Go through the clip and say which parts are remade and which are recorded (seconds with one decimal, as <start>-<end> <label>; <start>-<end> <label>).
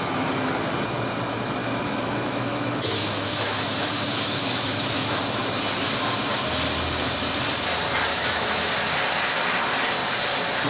0.0-1.6 recorded; 1.6-5.2 remade; 5.2-8.1 recorded; 8.1-8.7 remade; 8.7-10.7 recorded